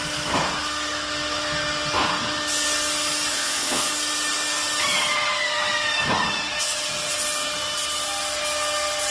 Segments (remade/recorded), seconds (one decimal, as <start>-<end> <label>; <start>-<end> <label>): 0.0-3.3 recorded; 3.3-3.9 remade; 3.9-9.1 recorded